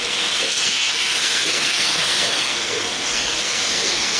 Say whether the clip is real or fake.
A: fake